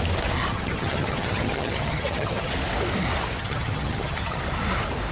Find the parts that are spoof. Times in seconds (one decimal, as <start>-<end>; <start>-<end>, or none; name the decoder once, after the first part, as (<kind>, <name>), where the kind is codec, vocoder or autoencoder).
0.5-2.5 (vocoder, HiFi-GAN); 3.4-4.4